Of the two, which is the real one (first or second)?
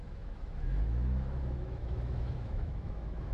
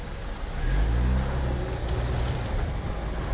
second